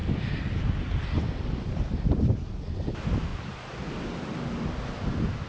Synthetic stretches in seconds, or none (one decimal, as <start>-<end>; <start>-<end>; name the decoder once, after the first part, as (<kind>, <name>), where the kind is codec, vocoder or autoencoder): none